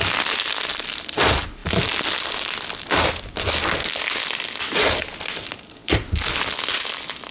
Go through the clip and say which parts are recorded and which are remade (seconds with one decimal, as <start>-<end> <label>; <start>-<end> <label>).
0.0-7.3 recorded